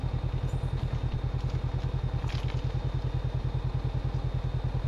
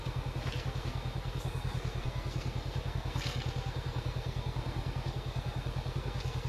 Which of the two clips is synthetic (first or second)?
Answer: second